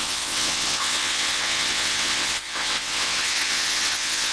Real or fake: fake